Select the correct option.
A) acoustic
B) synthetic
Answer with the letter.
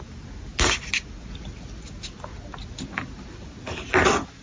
A